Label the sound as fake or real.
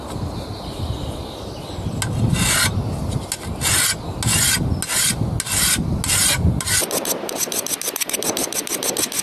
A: real